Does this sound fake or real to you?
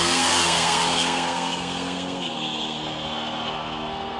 fake